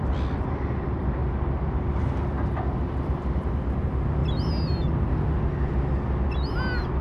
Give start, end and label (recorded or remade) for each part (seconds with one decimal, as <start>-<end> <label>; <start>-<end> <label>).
0.0-7.0 recorded